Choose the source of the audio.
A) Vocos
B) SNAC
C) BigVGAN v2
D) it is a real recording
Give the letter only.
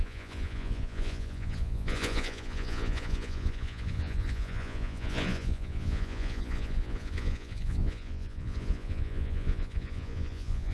A